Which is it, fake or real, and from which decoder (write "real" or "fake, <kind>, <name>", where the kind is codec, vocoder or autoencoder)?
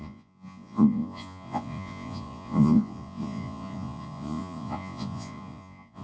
fake, vocoder, Vocos